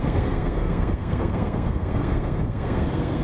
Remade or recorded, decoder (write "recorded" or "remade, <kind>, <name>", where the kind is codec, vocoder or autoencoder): remade, codec, SNAC